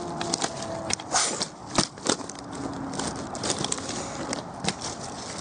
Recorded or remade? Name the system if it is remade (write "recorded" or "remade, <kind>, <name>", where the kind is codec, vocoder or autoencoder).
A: recorded